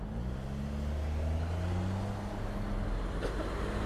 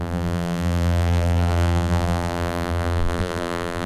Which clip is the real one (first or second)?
first